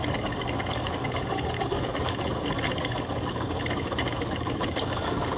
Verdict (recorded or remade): remade